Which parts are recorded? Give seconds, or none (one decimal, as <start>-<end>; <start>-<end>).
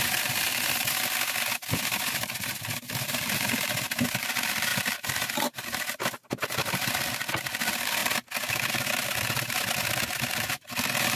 0.0-11.2